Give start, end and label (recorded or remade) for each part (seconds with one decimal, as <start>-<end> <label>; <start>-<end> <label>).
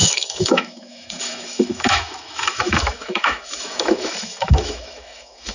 0.0-5.5 remade